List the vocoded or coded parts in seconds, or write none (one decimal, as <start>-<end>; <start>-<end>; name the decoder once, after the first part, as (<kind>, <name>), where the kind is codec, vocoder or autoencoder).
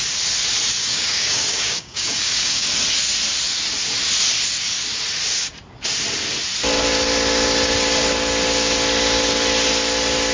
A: 0.8-2.7 (codec, DAC)